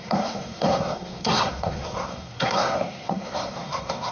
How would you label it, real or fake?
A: fake